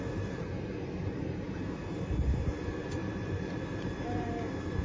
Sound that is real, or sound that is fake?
fake